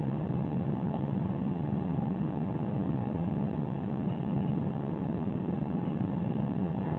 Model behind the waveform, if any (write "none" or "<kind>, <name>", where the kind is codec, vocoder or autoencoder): vocoder, WaveNeXt